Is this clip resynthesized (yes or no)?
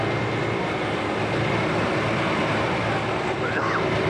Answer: no